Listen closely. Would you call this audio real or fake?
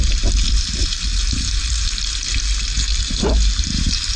fake